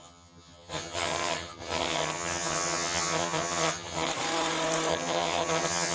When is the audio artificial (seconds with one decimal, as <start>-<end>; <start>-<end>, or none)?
0.0-4.1; 4.9-5.9